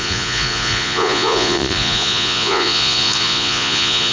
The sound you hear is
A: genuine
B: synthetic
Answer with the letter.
B